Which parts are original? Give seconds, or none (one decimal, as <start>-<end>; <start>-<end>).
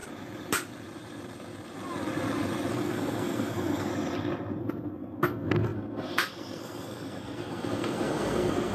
0.0-2.7; 3.9-4.6